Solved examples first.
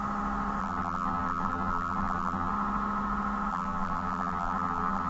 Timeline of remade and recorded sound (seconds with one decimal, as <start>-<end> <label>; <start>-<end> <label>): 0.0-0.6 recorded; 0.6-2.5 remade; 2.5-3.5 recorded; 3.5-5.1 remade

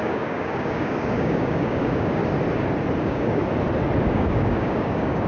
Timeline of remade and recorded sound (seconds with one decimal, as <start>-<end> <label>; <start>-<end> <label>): 0.0-2.2 remade; 2.2-3.0 recorded; 3.0-3.4 remade; 3.4-4.1 recorded; 4.1-5.3 remade

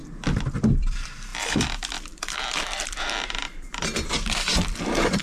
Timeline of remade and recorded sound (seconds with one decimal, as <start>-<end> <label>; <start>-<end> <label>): 0.0-0.5 recorded; 0.5-5.2 remade

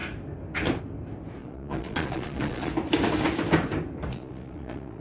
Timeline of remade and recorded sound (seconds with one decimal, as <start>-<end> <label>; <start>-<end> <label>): 0.0-1.4 recorded; 1.4-2.7 remade; 2.7-4.1 recorded; 4.1-5.0 remade

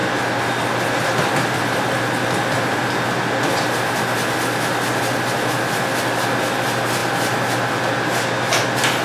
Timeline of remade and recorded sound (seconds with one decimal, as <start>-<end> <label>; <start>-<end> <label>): 0.0-9.0 recorded